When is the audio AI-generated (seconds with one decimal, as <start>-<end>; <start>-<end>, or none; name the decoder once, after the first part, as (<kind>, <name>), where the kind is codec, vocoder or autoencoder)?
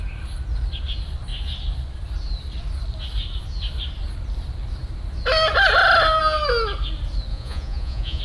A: 7.3-8.2 (vocoder, Vocos)